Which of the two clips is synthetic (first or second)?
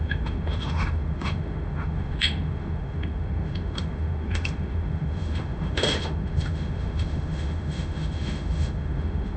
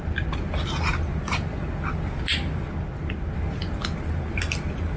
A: first